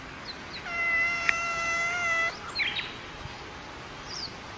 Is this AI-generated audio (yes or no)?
no